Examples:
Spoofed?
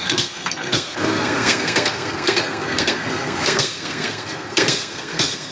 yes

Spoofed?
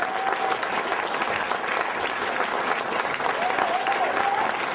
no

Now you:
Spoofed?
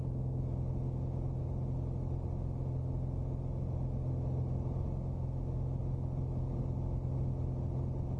no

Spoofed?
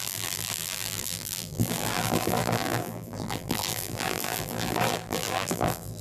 yes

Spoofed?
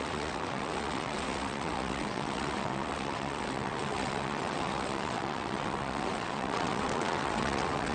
yes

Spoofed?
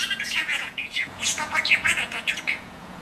yes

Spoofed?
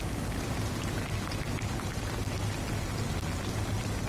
no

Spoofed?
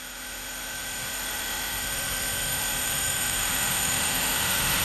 yes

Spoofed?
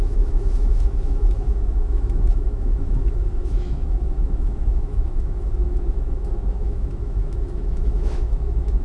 yes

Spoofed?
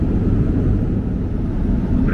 no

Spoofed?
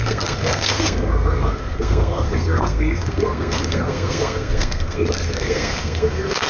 yes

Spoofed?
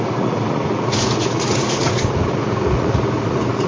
yes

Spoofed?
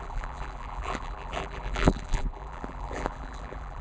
yes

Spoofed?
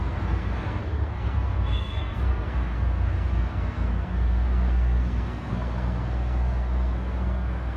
yes